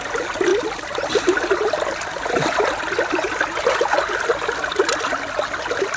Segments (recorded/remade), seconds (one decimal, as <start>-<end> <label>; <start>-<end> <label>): 0.0-6.0 recorded